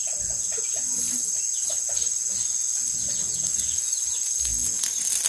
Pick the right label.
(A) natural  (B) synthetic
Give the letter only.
A